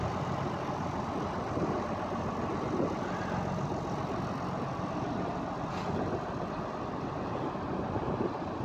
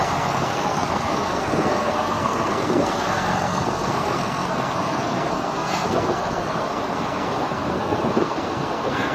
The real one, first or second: first